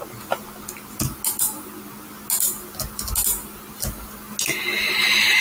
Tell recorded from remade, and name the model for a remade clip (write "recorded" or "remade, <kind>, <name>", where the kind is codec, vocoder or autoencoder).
recorded